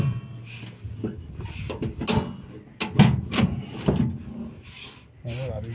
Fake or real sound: real